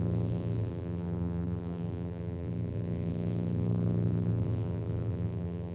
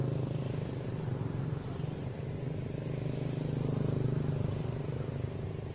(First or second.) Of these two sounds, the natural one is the second